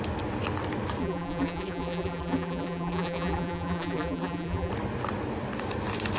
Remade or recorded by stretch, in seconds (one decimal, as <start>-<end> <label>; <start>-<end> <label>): 0.0-1.0 recorded; 1.0-4.7 remade; 4.7-6.2 recorded